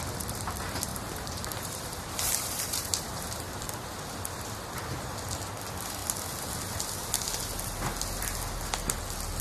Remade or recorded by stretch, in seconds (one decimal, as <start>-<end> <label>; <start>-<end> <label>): 0.0-0.9 recorded; 0.9-3.7 remade; 3.7-9.4 recorded